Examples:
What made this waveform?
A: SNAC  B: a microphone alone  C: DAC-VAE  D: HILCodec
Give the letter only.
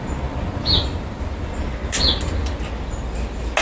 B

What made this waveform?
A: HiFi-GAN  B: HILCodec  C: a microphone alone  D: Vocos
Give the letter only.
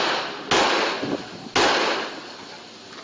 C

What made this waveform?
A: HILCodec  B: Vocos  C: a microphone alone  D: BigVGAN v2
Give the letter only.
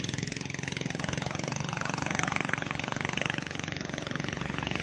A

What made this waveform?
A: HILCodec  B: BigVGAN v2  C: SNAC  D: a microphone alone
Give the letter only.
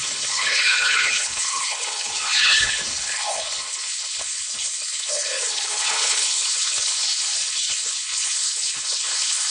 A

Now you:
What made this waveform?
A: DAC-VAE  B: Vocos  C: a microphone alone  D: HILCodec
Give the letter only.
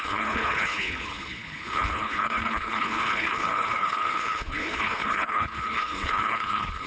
D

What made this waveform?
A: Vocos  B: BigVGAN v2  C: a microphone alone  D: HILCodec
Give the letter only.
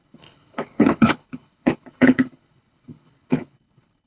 D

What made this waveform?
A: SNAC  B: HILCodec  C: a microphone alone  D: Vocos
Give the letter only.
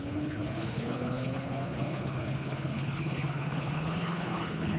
B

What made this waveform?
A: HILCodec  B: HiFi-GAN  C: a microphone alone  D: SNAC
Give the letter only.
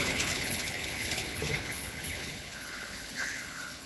A